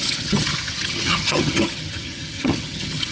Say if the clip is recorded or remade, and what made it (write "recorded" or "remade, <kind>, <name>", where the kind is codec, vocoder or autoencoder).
remade, vocoder, HiFi-GAN